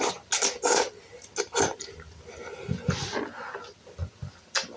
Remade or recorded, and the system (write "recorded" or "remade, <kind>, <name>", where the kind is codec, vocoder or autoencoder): recorded